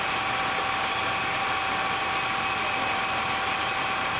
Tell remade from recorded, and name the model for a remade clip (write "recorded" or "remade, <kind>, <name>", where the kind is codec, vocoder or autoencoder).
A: recorded